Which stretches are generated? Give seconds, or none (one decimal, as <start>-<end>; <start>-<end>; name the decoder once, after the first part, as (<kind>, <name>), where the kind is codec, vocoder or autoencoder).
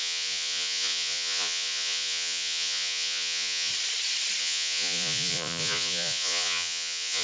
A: 0.0-3.7 (vocoder, Vocos); 4.4-7.2